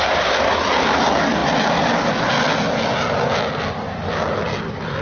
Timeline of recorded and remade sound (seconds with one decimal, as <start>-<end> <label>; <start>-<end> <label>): 0.0-5.0 recorded